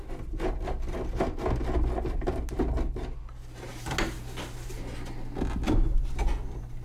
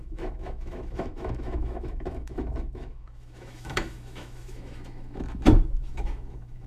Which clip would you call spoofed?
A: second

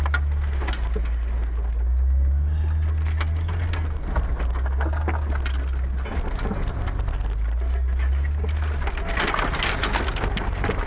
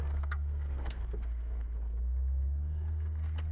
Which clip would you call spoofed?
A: second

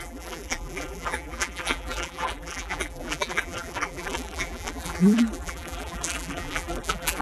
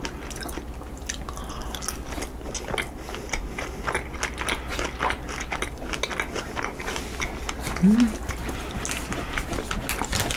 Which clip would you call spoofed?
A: first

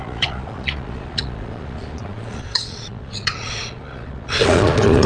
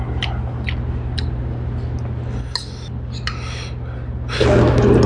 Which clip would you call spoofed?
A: first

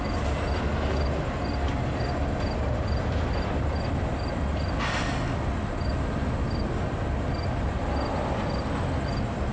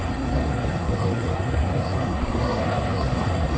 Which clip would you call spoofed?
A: second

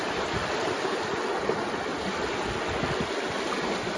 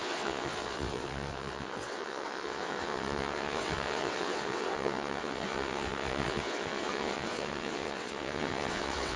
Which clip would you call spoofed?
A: second